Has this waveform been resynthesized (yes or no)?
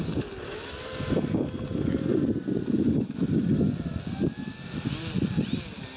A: no